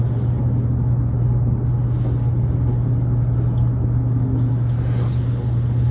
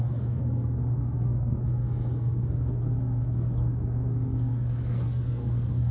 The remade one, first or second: second